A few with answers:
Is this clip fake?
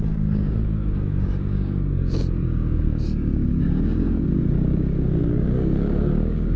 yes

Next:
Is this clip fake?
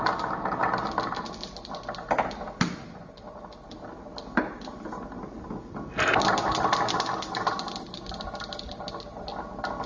no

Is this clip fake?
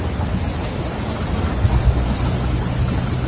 no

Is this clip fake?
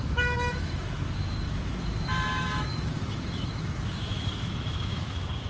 yes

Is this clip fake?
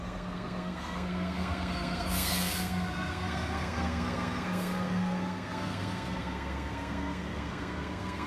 yes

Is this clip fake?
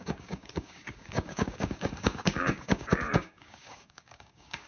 yes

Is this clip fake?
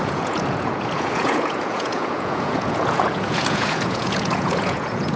yes